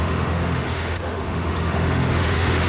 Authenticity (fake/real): fake